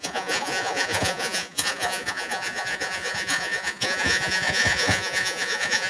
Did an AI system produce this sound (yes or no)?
yes